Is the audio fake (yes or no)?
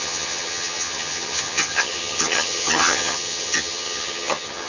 yes